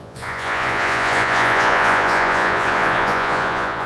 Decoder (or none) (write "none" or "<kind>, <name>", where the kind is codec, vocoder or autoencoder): vocoder, Vocos